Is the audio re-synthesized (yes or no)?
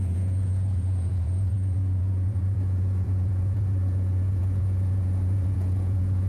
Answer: yes